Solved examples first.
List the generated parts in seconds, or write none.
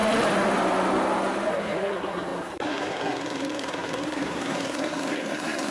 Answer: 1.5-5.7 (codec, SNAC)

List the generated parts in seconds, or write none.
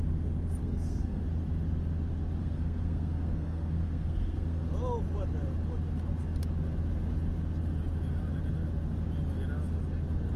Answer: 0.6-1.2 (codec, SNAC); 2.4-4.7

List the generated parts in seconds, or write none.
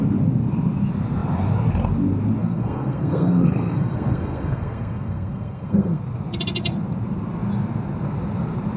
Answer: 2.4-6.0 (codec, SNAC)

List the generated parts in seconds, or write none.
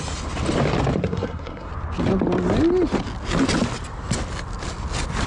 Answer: 1.0-1.7 (codec, SNAC)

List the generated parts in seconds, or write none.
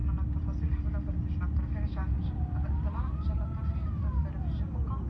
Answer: none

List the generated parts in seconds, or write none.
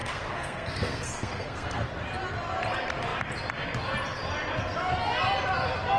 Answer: 0.0-1.9 (codec, SNAC)